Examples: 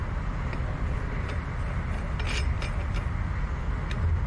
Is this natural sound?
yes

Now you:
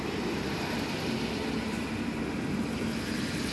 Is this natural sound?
yes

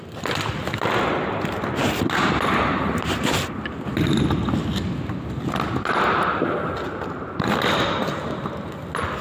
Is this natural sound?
yes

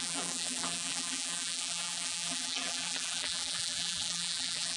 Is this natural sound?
no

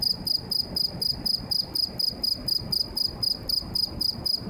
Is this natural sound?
no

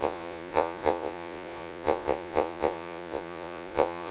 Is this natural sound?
no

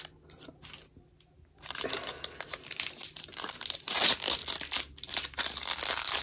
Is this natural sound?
yes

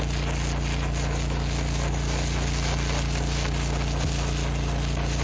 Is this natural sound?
yes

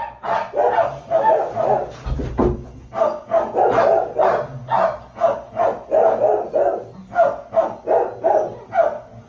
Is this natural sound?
yes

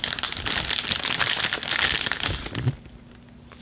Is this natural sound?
yes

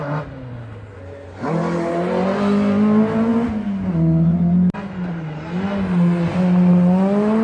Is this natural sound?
yes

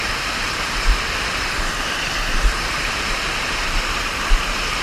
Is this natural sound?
no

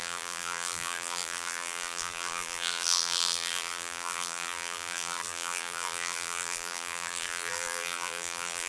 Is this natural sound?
no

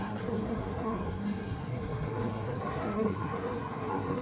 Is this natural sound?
no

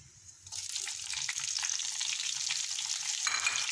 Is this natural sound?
yes